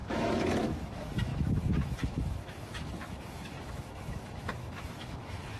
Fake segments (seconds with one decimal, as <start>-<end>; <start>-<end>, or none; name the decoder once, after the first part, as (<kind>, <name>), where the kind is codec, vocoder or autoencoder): 0.0-5.6 (autoencoder, DAC-VAE)